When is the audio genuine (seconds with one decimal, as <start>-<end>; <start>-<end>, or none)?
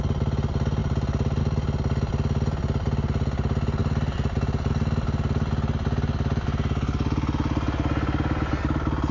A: 0.0-9.1